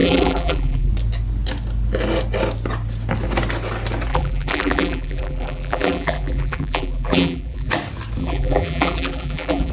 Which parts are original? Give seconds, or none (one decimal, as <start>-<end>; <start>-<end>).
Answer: 0.9-4.1; 7.7-8.2

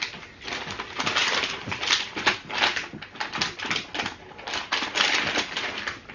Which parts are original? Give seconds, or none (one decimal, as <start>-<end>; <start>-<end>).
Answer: 0.0-1.2; 3.2-6.1

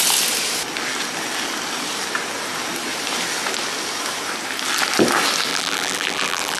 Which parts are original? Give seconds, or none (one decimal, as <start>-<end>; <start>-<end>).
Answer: 0.0-5.5

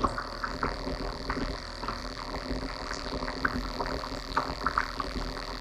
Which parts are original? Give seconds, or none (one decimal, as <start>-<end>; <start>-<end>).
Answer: 0.0-0.5; 1.6-2.0

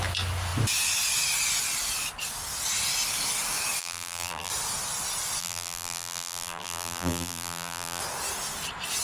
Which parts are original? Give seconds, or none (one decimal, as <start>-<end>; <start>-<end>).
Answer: 0.0-3.8; 4.5-5.4; 8.0-9.0